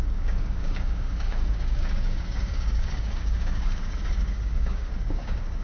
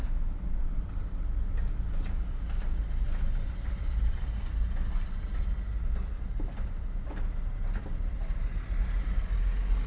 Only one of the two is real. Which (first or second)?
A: second